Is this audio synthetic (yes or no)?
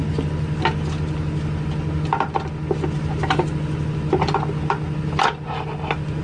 no